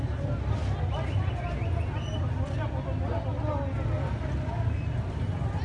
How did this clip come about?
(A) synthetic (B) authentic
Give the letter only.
B